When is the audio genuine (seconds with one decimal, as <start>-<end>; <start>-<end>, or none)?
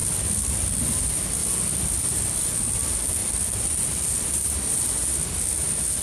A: 0.0-3.2; 4.7-6.0